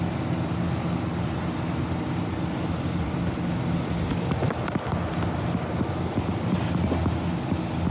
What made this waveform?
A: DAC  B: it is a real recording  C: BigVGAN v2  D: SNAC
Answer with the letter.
B